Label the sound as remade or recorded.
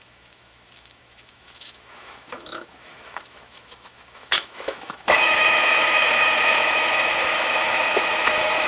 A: remade